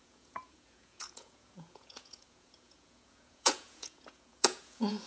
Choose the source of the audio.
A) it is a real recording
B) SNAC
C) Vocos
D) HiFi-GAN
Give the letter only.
C